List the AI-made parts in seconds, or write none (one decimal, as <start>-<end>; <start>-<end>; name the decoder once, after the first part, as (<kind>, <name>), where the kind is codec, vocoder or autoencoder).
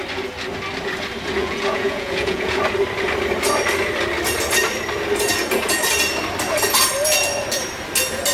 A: 1.4-2.6 (vocoder, Vocos)